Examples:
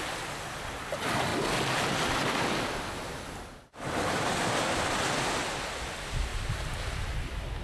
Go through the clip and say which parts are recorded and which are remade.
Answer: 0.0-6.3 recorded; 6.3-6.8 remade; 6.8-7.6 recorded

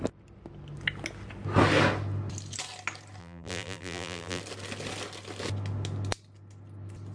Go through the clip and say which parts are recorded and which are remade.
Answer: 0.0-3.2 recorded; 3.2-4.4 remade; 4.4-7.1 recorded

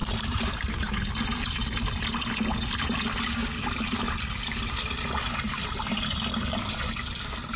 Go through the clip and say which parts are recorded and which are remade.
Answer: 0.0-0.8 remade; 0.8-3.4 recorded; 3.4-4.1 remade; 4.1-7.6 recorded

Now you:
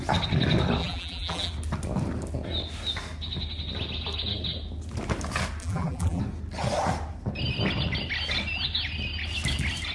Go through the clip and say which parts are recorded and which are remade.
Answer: 0.0-0.8 recorded; 0.8-1.5 remade; 1.5-5.6 recorded; 5.6-6.2 remade; 6.2-9.9 recorded

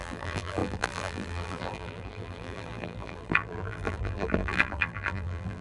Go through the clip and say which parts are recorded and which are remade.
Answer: 0.0-5.6 remade